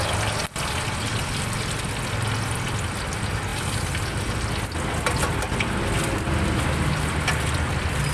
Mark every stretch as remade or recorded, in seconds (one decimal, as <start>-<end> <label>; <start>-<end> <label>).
0.0-8.1 recorded